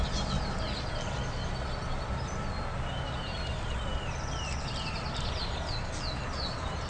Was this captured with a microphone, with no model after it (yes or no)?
yes